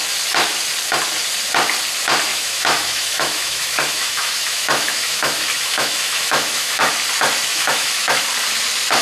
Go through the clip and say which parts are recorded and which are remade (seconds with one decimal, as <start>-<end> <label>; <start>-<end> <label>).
0.0-2.3 recorded; 2.3-6.9 remade; 6.9-7.5 recorded; 7.5-8.2 remade; 8.2-9.0 recorded